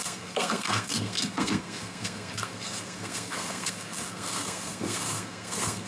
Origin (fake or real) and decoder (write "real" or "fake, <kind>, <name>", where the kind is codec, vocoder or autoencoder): fake, codec, SNAC